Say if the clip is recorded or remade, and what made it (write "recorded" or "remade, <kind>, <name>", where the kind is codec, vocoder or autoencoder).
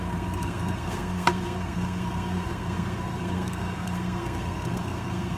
remade, codec, SNAC